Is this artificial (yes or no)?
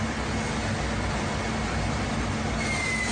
no